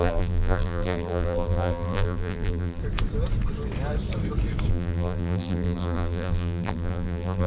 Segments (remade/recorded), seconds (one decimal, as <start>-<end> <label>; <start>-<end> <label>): 0.0-2.8 remade; 2.8-4.7 recorded; 4.7-7.5 remade